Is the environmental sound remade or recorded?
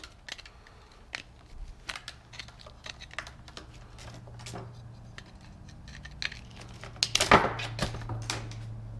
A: recorded